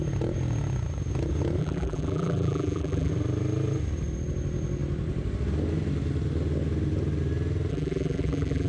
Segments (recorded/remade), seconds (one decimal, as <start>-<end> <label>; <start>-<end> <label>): 0.0-1.6 recorded; 1.6-3.1 remade; 3.1-7.7 recorded; 7.7-8.7 remade